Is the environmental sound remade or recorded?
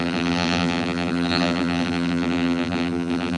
remade